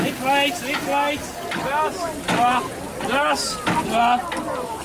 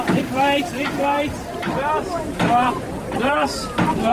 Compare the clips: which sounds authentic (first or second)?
first